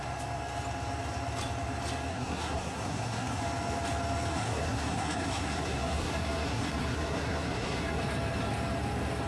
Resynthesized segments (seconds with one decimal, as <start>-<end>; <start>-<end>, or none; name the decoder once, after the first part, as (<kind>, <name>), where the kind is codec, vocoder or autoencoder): 2.1-3.4 (codec, SNAC); 4.3-8.0